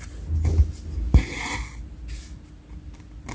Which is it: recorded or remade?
recorded